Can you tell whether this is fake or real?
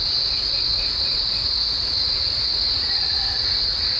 fake